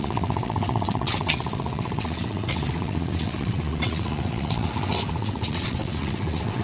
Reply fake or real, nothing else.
fake